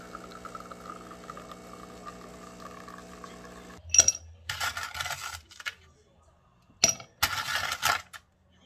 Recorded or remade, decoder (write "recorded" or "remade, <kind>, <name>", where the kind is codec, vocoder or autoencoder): recorded